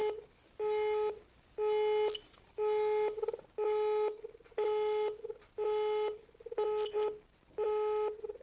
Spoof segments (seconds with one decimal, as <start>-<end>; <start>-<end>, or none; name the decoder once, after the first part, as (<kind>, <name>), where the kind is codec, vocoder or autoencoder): none